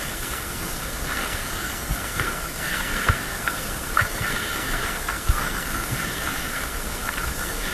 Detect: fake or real fake